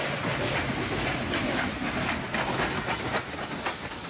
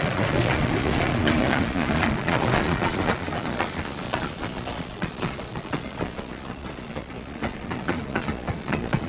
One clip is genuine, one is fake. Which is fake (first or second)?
second